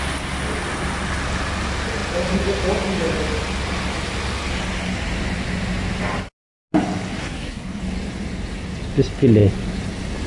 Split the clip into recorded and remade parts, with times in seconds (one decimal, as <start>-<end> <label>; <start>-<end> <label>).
0.0-7.2 recorded; 7.2-7.8 remade; 7.8-10.3 recorded